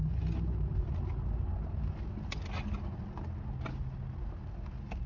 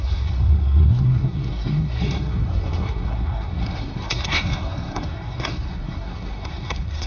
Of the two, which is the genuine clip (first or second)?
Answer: first